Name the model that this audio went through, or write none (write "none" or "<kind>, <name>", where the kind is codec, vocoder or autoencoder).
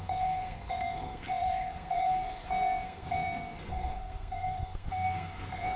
codec, SNAC